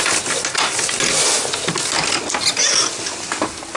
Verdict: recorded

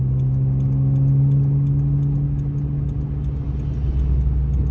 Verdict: recorded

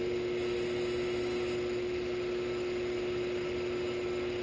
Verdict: recorded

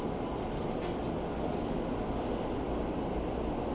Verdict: recorded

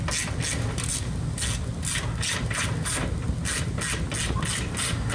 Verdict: recorded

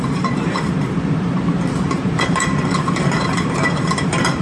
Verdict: remade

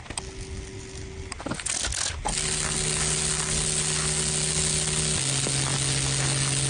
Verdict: recorded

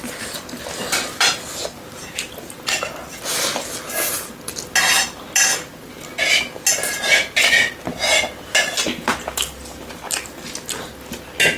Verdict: recorded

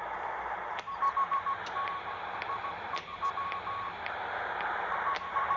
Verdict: remade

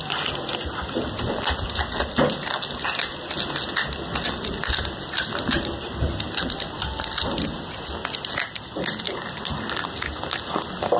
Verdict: recorded